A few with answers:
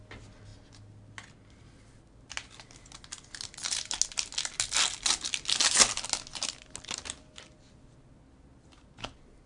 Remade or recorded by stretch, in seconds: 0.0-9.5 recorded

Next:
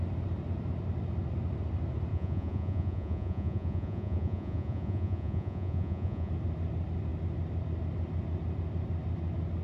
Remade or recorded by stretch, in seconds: 0.0-2.1 recorded; 2.1-6.3 remade; 6.3-9.6 recorded

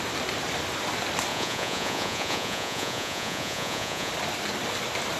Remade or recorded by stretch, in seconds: 0.0-1.3 recorded; 1.3-4.1 remade; 4.1-5.2 recorded

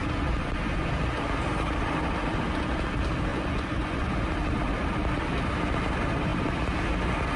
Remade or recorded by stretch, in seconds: 0.0-0.9 remade; 0.9-3.3 recorded; 3.3-4.2 remade; 4.2-7.4 recorded

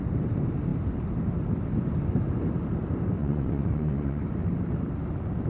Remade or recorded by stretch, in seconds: 0.0-3.2 recorded; 3.2-4.2 remade; 4.2-5.5 recorded

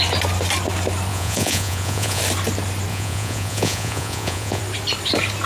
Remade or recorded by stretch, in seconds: 0.0-1.1 recorded; 1.1-2.2 remade; 2.2-2.9 recorded; 2.9-4.6 remade; 4.6-5.5 recorded

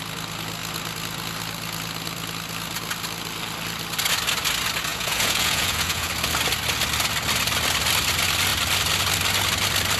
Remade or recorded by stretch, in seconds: 0.0-4.9 recorded; 4.9-6.1 remade; 6.1-10.0 recorded

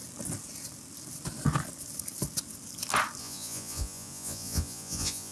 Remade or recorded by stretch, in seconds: 0.0-3.2 recorded; 3.2-5.3 remade